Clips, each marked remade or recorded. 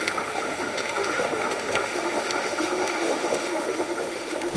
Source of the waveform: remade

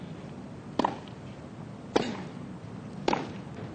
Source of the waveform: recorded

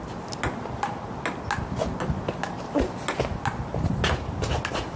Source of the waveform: recorded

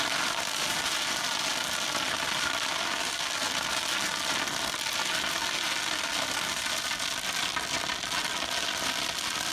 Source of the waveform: recorded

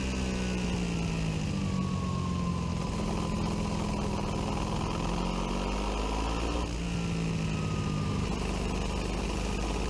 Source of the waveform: recorded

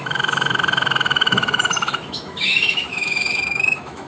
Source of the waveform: remade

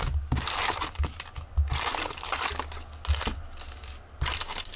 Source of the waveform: recorded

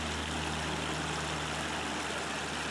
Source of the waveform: recorded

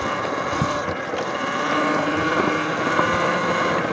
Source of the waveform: recorded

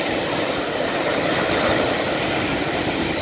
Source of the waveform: recorded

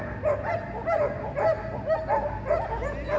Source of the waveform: recorded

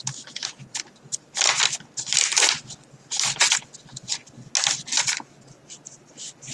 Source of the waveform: recorded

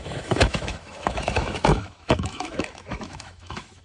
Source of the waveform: remade